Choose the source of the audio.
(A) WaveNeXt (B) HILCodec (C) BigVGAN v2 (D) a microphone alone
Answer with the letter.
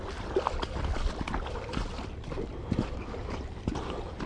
D